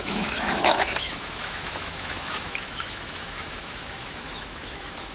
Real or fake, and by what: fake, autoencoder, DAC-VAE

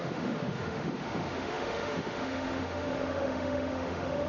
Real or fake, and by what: fake, autoencoder, DAC-VAE